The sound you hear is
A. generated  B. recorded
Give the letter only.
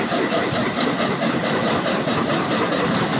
A